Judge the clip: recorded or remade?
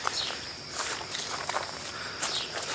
recorded